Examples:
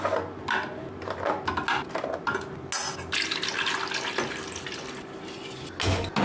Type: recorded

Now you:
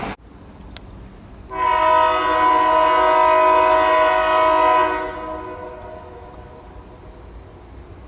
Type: recorded